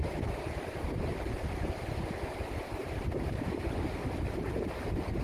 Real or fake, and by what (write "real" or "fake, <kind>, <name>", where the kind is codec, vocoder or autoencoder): fake, vocoder, BigVGAN v2